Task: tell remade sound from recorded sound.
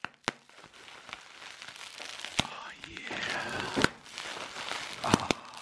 recorded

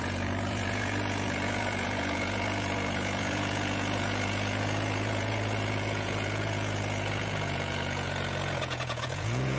remade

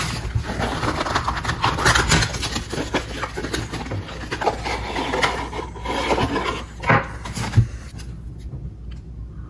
recorded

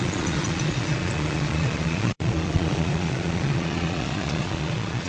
remade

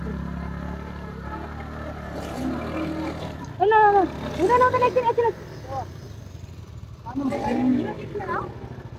recorded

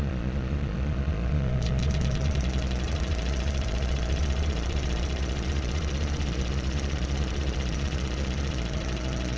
remade